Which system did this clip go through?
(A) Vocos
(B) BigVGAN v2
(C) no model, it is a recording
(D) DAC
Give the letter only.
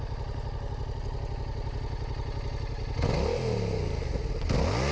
C